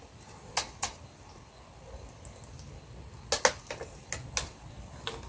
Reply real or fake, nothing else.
real